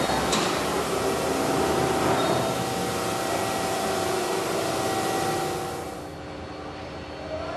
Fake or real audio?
real